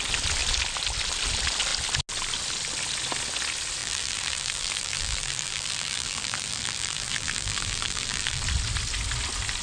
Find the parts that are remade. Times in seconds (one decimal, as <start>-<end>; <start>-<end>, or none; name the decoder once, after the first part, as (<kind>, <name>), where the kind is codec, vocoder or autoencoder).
3.8-8.4 (vocoder, BigVGAN v2)